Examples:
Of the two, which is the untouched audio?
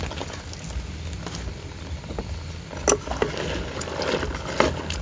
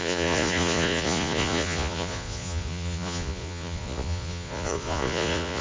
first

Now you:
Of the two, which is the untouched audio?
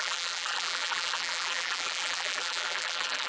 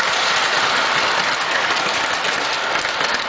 second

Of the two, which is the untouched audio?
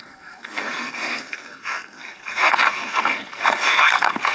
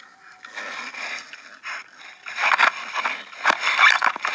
second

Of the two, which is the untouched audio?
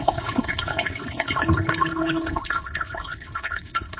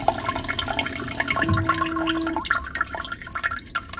second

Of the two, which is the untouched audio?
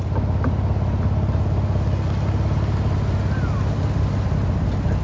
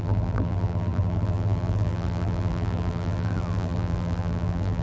first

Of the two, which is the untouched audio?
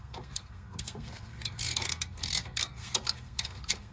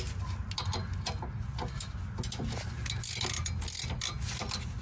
second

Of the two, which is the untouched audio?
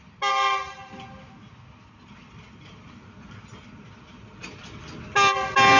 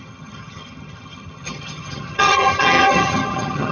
first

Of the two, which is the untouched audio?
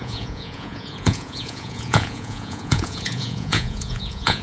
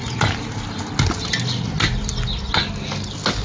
second